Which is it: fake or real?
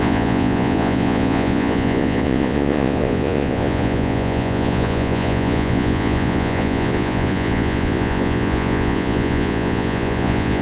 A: fake